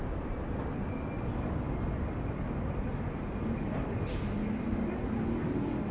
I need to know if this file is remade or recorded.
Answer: recorded